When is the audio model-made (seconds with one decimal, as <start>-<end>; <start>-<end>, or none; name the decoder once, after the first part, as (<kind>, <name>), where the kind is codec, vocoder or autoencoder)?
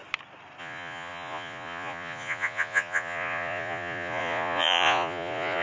0.6-5.6 (vocoder, Vocos)